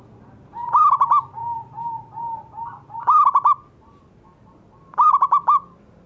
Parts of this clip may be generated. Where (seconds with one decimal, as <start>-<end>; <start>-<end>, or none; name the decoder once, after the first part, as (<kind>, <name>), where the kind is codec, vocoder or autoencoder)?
none